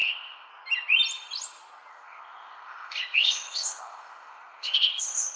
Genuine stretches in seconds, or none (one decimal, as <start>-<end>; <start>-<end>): 0.5-1.9